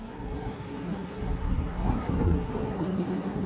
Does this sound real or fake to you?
fake